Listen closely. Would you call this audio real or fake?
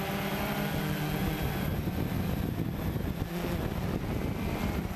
real